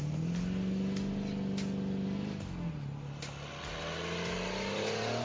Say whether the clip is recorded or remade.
recorded